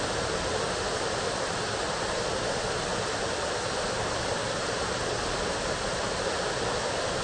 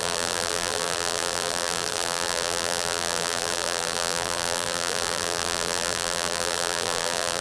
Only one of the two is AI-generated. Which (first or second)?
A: second